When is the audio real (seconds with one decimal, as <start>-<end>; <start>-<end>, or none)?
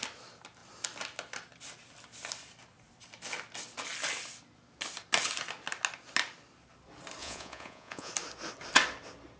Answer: 0.0-7.2; 8.1-9.4